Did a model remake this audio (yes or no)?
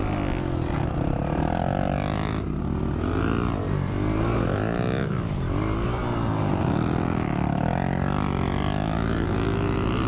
no